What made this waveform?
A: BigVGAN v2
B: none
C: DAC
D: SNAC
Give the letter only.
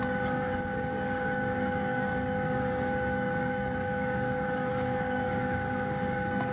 C